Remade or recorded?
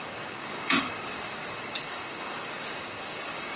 remade